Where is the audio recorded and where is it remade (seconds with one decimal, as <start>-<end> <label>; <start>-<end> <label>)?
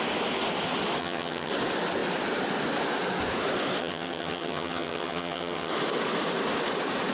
0.0-1.0 recorded; 1.0-1.5 remade; 1.5-3.8 recorded; 3.8-5.7 remade; 5.7-7.1 recorded